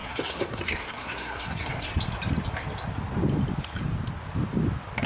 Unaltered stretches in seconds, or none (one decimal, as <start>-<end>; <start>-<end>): 1.9-5.1